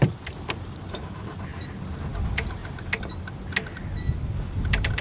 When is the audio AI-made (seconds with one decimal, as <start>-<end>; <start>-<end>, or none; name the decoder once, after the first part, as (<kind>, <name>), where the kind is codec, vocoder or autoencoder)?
0.0-2.6 (vocoder, BigVGAN v2); 4.1-5.0